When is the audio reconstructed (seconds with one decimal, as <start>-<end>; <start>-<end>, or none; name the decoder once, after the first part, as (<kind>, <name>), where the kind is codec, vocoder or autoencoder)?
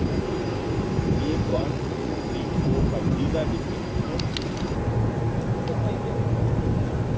1.5-2.2 (vocoder, Vocos)